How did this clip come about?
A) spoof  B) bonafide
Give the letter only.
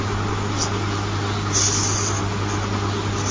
B